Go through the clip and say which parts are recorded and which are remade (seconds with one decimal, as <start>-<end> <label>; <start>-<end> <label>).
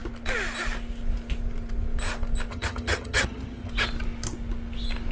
0.0-2.5 recorded; 2.5-3.7 remade; 3.7-5.1 recorded